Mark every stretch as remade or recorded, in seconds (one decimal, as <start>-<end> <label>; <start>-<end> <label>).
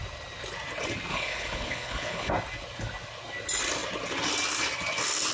0.0-1.1 recorded; 1.1-2.3 remade; 2.3-5.3 recorded